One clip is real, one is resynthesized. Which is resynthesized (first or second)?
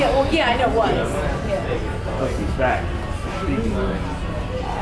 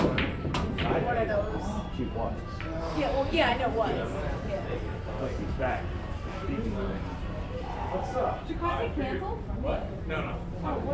second